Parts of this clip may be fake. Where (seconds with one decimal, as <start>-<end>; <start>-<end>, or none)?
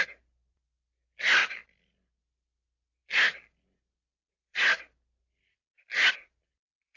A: none